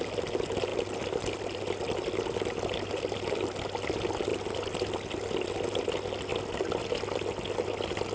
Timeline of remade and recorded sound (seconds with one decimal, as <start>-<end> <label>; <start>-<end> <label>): 0.0-8.1 recorded